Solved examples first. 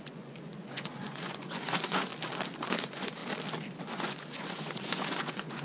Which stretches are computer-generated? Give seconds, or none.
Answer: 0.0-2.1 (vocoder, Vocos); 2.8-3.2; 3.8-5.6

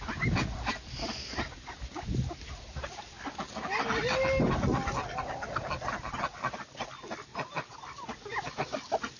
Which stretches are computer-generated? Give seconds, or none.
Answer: none

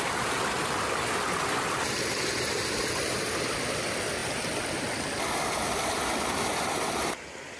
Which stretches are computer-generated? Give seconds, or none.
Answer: none